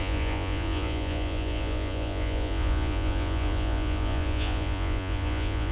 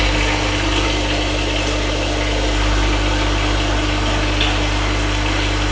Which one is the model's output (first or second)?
first